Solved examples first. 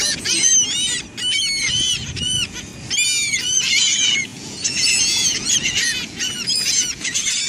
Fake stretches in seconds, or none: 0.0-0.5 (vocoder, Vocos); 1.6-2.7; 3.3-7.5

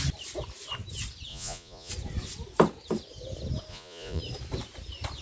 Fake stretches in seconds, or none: 1.3-1.9 (vocoder, Vocos); 3.7-4.2

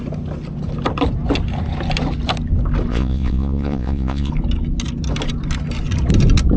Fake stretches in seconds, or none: 2.9-4.3 (vocoder, Vocos)

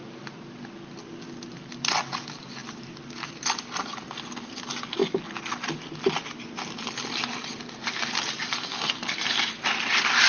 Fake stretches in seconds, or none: none

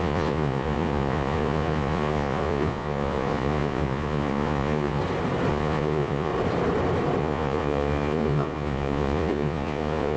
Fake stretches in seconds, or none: 0.0-5.0 (vocoder, Vocos); 5.5-6.3; 7.2-10.2

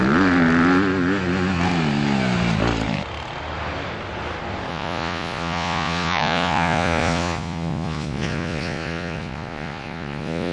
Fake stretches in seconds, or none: 4.7-10.5 (vocoder, Vocos)